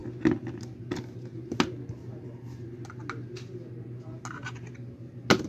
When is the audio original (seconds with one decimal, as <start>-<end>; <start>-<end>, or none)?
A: 0.0-5.5